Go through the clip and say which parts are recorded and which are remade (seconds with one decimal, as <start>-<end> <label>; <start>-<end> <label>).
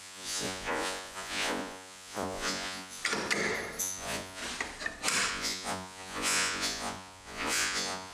0.0-3.0 remade; 3.0-3.8 recorded; 3.8-4.4 remade; 4.4-5.3 recorded; 5.3-8.1 remade